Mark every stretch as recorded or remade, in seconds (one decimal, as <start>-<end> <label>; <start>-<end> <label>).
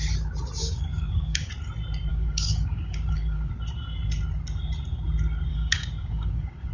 0.0-0.6 recorded; 0.6-1.5 remade; 1.5-2.1 recorded; 2.1-3.5 remade; 3.5-5.5 recorded; 5.5-6.7 remade